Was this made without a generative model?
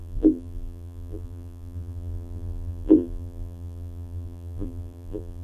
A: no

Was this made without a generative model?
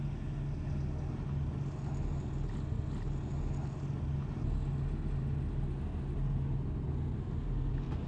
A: yes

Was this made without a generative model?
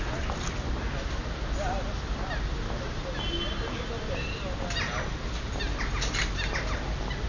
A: yes